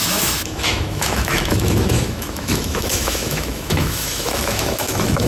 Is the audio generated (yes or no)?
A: yes